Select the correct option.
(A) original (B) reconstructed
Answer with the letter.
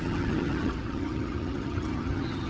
B